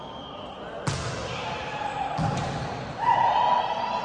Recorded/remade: recorded